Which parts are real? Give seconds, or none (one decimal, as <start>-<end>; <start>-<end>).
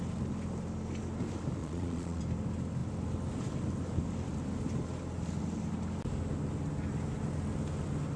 0.0-1.6; 2.2-8.2